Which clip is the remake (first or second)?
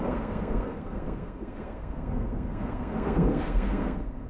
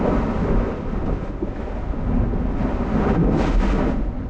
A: first